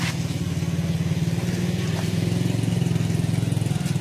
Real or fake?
real